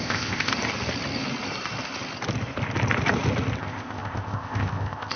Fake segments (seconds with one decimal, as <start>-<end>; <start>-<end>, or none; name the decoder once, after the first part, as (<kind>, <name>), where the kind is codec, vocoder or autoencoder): 0.0-0.5 (codec, ZipCodec); 3.6-5.2